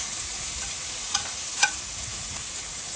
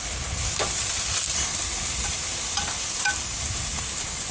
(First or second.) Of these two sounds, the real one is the second